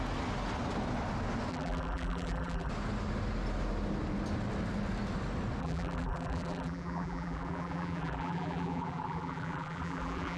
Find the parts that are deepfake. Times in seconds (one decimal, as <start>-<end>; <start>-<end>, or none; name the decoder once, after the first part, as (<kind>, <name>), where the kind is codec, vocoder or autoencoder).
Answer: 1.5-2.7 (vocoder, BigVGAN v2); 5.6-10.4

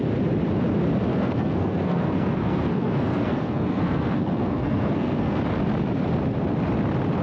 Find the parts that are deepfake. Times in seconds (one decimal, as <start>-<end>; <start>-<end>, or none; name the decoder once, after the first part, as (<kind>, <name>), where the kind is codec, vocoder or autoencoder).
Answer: 1.1-5.4 (codec, SNAC)

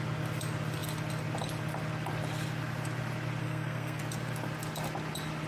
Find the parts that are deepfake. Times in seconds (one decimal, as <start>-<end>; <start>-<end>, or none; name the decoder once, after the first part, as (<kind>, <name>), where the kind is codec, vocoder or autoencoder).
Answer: 3.4-4.0 (codec, SNAC)

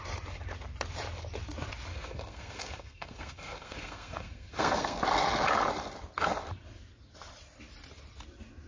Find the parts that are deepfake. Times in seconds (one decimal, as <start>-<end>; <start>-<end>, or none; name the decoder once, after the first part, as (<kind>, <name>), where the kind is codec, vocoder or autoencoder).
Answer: 1.9-5.0 (codec, SNAC)